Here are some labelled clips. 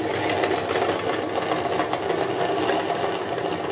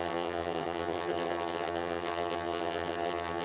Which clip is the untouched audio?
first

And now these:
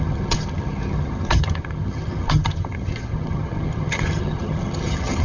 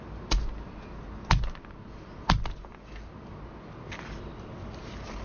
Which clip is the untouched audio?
second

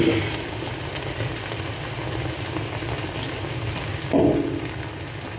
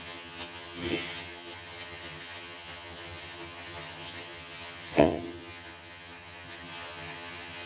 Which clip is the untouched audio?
first